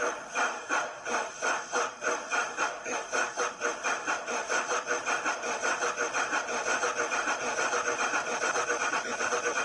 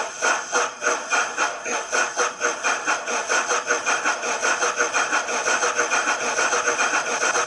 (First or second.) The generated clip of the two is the first